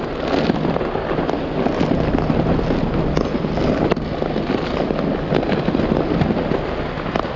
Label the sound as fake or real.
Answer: real